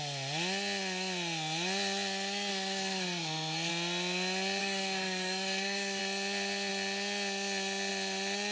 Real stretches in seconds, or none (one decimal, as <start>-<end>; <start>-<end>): 0.0-2.5; 3.7-4.6; 6.0-8.5